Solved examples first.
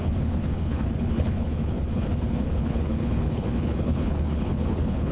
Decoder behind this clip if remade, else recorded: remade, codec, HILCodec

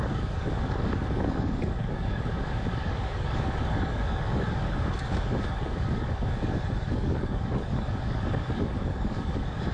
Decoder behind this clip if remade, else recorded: remade, codec, DAC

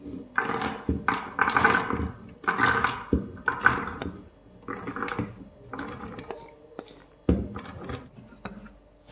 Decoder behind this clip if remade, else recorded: recorded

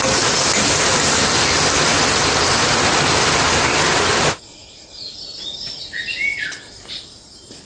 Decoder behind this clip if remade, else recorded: recorded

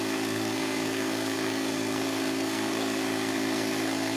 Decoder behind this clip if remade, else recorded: remade, codec, SNAC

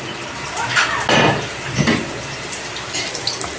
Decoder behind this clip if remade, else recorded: recorded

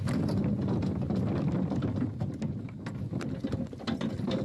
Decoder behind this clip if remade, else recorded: recorded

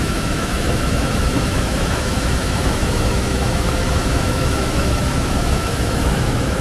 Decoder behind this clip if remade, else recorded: remade, autoencoder, DAC-VAE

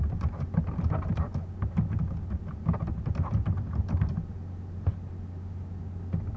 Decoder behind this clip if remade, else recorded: recorded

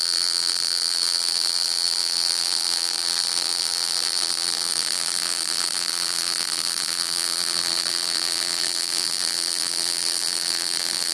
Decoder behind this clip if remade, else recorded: remade, vocoder, BigVGAN v2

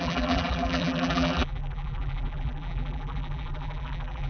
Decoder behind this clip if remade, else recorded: remade, vocoder, BigVGAN v2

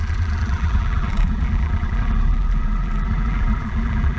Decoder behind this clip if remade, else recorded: remade, vocoder, BigVGAN v2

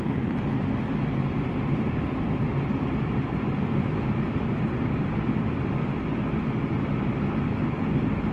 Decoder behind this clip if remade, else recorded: recorded